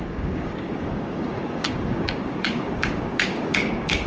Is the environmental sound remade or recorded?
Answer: remade